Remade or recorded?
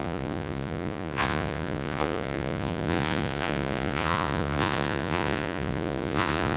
remade